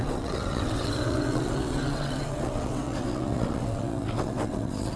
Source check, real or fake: fake